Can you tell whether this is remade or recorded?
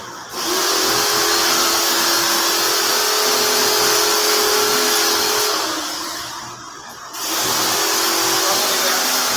recorded